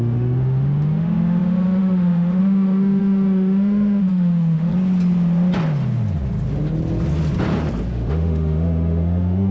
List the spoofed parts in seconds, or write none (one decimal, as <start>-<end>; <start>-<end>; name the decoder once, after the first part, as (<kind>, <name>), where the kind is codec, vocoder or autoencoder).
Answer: 0.0-4.7 (autoencoder, DAC-VAE); 7.9-9.5